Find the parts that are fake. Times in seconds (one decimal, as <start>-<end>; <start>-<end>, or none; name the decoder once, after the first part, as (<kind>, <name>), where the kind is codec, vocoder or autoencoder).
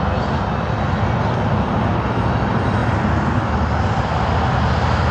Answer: none